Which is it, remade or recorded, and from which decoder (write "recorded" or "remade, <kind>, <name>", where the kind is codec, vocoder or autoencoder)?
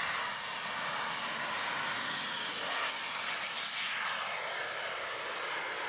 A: recorded